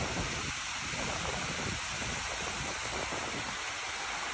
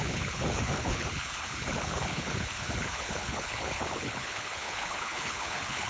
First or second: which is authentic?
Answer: first